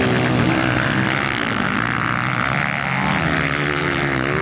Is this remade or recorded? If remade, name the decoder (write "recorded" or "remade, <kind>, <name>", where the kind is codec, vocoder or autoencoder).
recorded